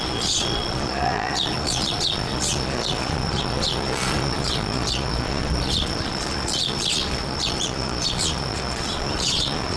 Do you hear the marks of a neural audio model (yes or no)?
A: yes